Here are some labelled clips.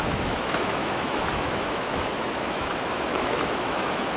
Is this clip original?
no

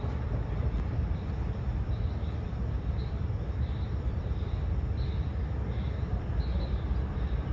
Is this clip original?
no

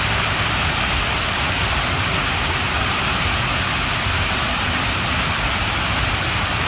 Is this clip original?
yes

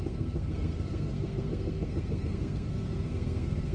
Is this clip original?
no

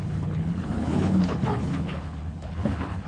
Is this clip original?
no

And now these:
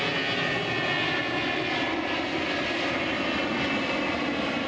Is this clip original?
yes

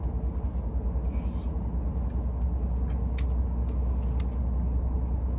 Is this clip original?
yes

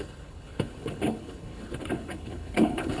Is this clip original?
no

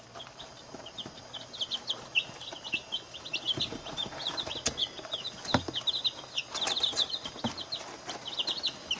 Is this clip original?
yes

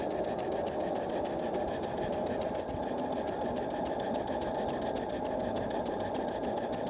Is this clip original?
yes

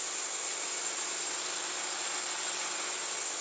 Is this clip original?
yes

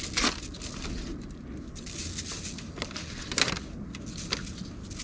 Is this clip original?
yes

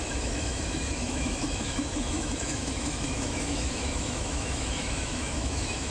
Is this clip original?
no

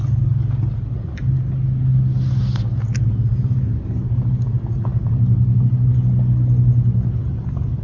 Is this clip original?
yes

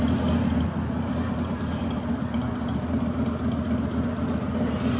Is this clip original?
yes